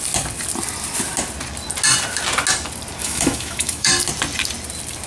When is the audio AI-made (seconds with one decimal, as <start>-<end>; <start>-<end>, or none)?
3.0-3.9